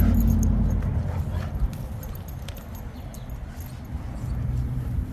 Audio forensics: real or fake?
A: real